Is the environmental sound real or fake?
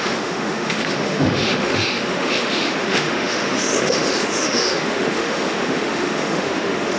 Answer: fake